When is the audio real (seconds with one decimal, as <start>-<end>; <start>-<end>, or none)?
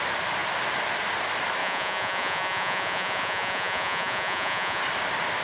0.0-1.6; 4.8-5.4